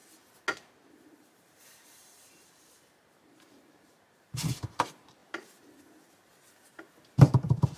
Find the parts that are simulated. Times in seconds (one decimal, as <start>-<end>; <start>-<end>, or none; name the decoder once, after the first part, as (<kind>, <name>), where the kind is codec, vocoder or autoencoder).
0.9-5.2 (vocoder, BigVGAN v2); 7.2-7.8